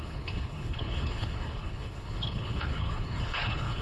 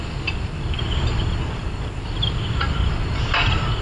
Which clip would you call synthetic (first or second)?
first